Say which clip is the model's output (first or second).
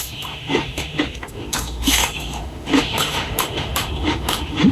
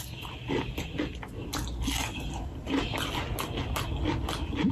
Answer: first